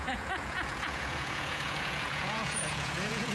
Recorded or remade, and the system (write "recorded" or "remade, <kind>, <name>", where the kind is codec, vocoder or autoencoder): remade, vocoder, Vocos